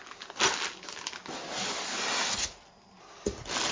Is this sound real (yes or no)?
yes